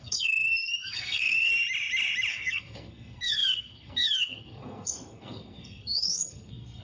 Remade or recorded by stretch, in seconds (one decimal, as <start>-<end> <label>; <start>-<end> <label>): 0.0-1.5 remade; 1.5-2.3 recorded; 2.3-6.8 remade